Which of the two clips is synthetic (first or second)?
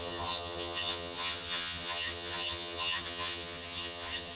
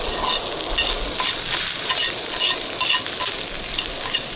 first